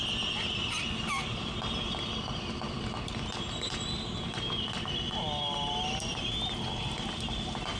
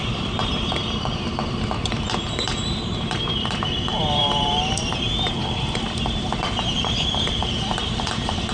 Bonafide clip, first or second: first